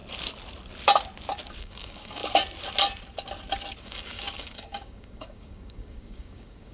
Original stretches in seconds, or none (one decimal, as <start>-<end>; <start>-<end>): 0.0-1.6; 2.2-3.8